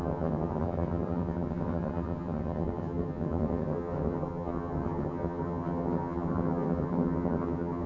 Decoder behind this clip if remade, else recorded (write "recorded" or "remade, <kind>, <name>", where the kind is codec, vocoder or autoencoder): remade, vocoder, HiFi-GAN